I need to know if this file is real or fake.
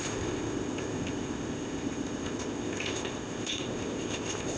fake